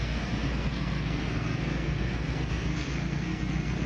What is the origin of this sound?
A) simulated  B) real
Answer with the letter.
A